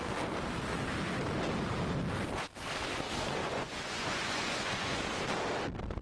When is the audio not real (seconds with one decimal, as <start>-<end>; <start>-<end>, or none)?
3.4-5.0